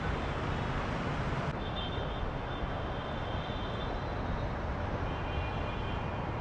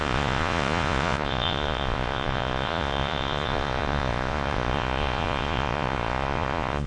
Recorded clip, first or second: first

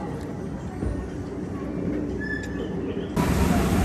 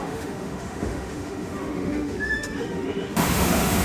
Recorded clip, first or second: first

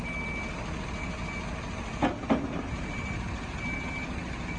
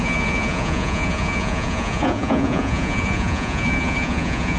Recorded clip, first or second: first